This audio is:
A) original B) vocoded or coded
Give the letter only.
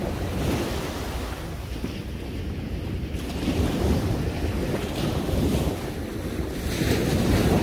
A